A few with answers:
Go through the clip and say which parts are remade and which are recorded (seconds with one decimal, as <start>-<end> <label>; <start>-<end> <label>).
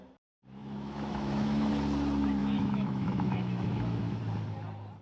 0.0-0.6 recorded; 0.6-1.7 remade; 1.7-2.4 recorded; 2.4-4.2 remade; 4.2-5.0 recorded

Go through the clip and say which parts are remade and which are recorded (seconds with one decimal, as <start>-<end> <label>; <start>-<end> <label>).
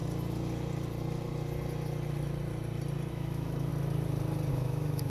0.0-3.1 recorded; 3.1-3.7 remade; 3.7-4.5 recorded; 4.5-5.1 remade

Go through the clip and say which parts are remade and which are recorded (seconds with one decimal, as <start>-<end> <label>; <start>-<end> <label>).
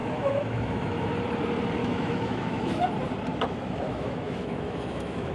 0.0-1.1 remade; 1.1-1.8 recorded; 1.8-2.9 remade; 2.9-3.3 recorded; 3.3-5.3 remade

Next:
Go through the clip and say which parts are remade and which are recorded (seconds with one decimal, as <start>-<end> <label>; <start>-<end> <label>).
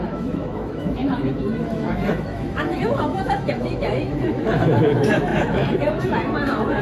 0.0-6.8 remade